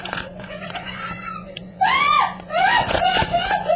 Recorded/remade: remade